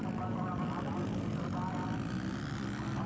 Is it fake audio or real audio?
real